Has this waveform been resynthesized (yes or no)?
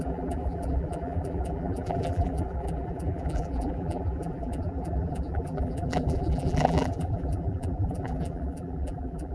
yes